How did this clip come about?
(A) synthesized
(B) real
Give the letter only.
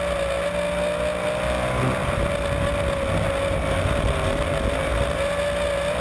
B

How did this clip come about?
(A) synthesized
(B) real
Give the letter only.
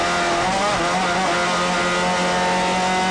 B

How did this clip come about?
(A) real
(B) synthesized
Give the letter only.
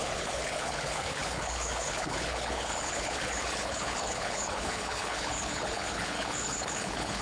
B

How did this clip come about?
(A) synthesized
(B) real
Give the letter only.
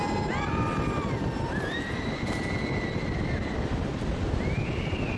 A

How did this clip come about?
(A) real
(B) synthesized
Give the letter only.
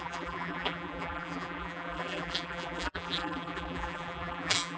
B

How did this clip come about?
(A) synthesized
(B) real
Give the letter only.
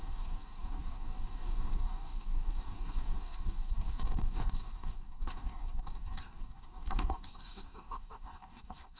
A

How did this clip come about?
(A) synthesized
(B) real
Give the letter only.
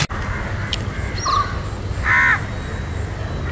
B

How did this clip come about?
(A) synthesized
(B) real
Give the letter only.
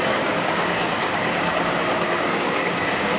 A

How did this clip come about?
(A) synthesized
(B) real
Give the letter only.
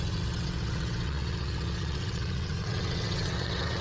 A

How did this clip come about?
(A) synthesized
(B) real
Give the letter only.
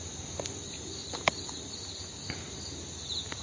B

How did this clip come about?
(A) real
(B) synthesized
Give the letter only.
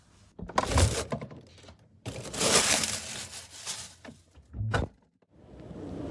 A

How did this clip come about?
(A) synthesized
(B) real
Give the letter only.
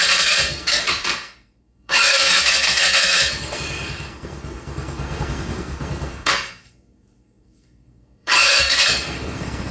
A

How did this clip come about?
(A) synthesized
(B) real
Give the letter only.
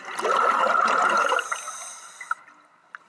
B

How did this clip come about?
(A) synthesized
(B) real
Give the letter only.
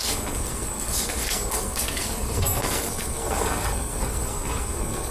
A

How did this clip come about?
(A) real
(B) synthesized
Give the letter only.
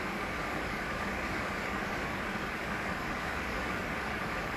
B